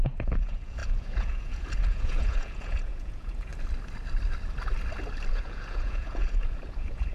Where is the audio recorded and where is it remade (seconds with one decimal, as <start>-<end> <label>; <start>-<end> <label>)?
0.0-3.5 remade; 3.5-5.3 recorded; 5.3-7.1 remade